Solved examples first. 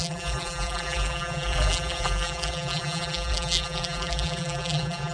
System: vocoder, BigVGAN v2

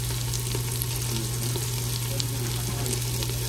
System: none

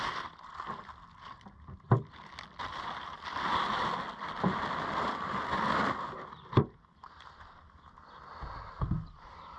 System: none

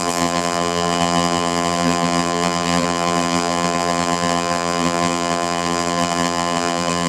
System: vocoder, BigVGAN v2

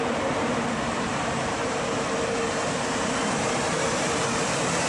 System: vocoder, BigVGAN v2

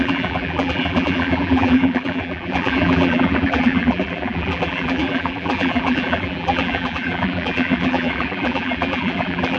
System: vocoder, BigVGAN v2